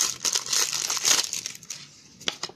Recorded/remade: recorded